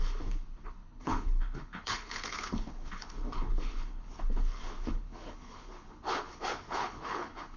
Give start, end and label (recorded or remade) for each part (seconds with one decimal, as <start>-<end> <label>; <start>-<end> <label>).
0.0-7.6 remade